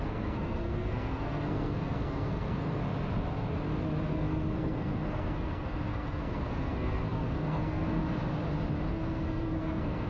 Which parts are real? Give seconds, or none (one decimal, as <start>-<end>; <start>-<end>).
2.8-4.1; 8.0-8.9